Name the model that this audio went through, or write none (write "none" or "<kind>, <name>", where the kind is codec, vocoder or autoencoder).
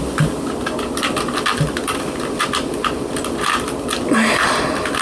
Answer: none